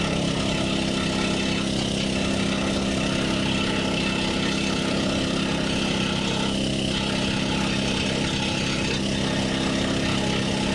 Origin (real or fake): real